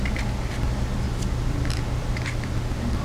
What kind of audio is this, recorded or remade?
recorded